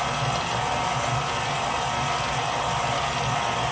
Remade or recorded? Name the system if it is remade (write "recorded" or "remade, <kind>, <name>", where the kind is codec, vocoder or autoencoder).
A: recorded